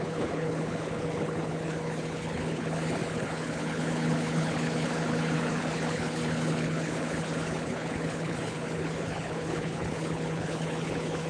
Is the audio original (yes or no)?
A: no